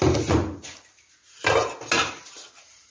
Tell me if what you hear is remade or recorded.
recorded